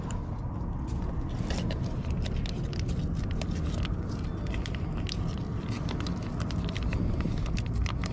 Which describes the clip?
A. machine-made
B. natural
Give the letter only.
B